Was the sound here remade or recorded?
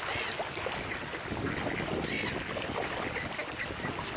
recorded